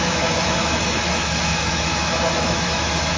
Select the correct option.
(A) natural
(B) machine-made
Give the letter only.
B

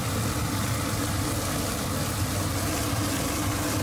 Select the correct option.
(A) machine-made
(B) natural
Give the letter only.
B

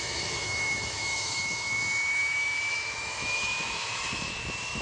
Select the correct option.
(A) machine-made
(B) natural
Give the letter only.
A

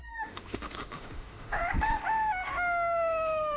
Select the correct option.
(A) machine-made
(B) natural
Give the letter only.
A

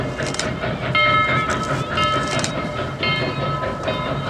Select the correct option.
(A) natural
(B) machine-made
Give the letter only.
A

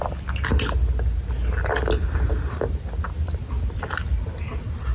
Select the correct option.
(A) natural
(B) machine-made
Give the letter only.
A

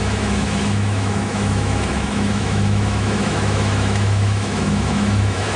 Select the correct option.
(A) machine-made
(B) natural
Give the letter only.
A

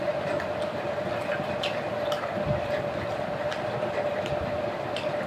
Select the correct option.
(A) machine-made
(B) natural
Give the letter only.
B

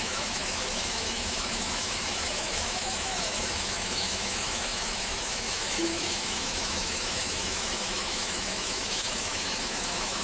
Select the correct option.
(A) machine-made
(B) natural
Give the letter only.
A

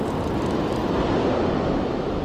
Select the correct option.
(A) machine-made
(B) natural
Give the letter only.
B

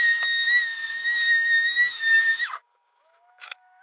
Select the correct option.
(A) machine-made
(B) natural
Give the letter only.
A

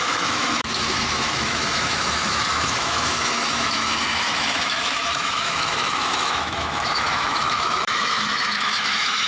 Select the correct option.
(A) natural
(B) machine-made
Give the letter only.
B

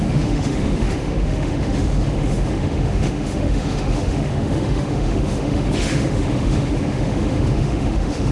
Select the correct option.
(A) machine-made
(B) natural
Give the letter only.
A